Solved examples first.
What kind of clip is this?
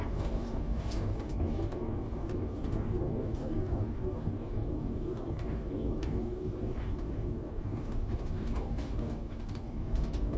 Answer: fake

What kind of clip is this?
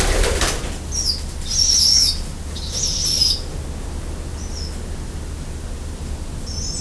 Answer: real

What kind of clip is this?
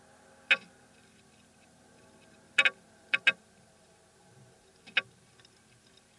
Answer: real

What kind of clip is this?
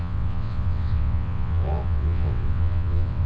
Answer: fake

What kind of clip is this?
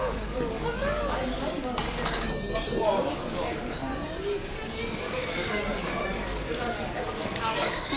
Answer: fake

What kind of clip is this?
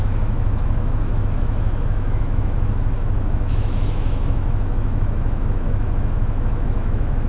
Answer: fake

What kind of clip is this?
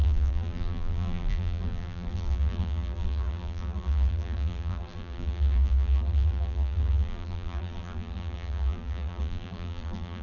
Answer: fake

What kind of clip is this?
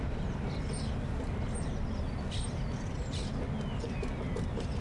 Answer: real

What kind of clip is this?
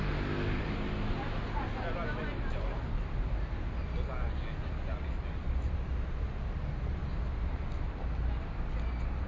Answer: real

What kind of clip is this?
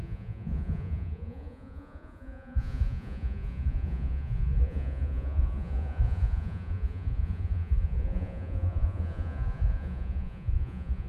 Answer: fake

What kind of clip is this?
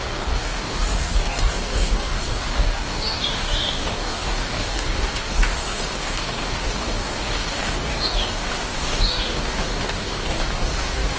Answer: fake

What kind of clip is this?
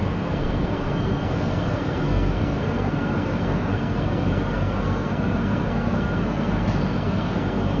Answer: fake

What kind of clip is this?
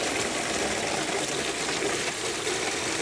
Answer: real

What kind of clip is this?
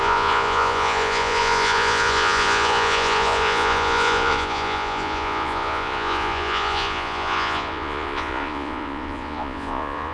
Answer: fake